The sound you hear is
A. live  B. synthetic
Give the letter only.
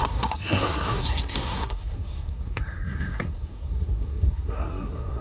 B